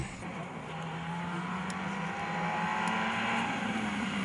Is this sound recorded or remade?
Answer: recorded